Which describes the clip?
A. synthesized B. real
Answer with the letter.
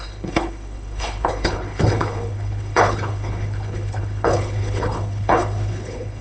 A